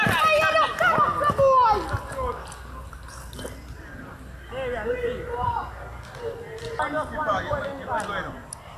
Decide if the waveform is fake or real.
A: real